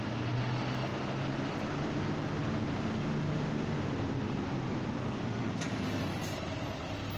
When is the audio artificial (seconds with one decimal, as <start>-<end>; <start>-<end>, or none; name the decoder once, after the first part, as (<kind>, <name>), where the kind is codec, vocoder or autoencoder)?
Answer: 5.0-5.5 (codec, SNAC)